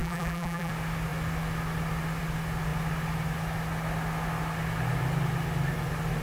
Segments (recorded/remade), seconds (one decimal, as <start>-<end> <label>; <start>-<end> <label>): 0.0-0.7 remade; 0.7-6.2 recorded